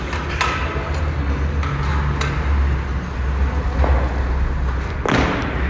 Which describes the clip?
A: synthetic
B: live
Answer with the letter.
B